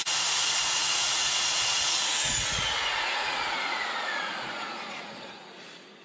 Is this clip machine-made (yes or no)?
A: yes